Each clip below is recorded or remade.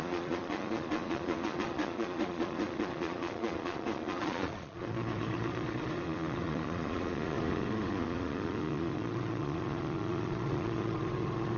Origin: remade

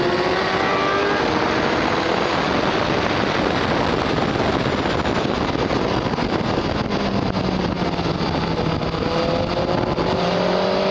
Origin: recorded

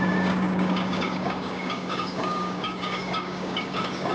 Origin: remade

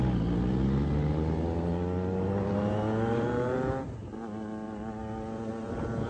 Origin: recorded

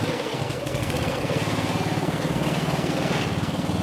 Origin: remade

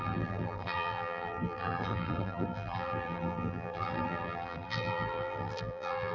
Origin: remade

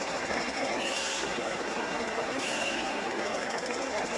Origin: remade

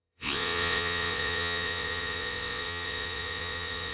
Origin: remade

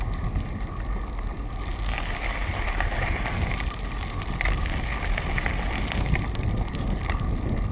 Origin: recorded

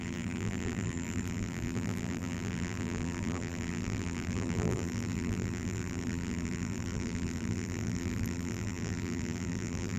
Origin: remade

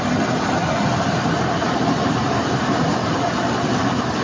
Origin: recorded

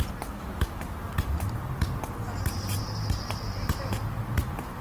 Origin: recorded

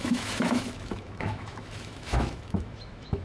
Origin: remade